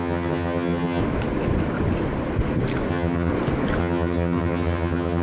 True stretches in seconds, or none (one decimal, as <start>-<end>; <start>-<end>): 1.0-2.9; 3.3-3.8